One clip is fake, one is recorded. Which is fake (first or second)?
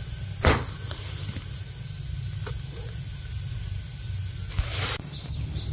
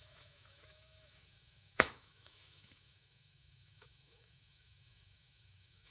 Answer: second